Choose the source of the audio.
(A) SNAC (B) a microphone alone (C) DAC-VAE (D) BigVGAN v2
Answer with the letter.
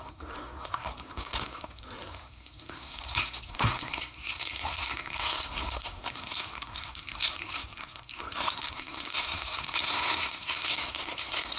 A